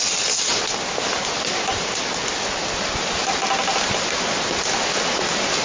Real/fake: real